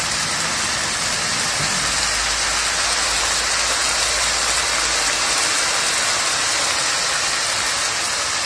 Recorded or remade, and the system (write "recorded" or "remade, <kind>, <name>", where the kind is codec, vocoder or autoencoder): recorded